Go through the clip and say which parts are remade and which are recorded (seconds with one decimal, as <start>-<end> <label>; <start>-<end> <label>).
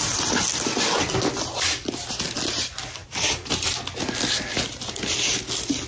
0.0-3.0 recorded; 3.0-3.8 remade; 3.8-5.9 recorded